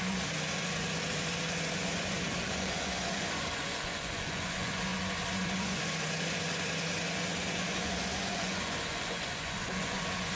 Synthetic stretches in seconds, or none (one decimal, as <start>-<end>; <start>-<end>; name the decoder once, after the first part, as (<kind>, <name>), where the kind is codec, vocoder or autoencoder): 0.0-10.4 (vocoder, Vocos)